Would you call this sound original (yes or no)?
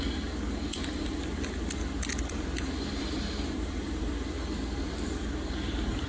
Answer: yes